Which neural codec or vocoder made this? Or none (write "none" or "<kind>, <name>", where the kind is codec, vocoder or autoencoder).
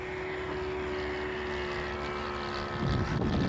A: none